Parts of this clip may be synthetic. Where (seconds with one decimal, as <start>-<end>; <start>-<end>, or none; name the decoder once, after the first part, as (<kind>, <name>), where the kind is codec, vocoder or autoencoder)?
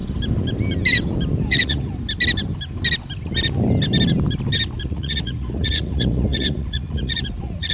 1.5-1.9 (vocoder, Vocos); 4.8-7.7